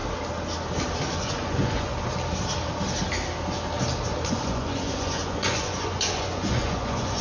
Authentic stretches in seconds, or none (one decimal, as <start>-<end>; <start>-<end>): 0.0-1.1; 1.9-4.3